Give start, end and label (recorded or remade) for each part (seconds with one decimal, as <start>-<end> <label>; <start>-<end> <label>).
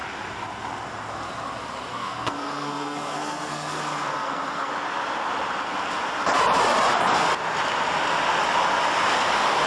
0.0-1.9 recorded; 1.9-4.7 remade; 4.7-9.7 recorded